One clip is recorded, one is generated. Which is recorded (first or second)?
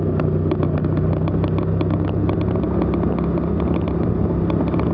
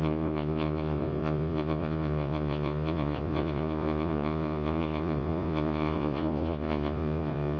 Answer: first